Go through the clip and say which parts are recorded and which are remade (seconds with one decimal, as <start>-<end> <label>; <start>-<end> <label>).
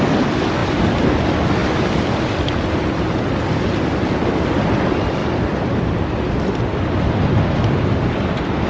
0.0-0.6 recorded; 0.6-1.1 remade; 1.1-1.6 recorded; 1.6-3.6 remade; 3.6-5.2 recorded; 5.2-6.6 remade; 6.6-8.7 recorded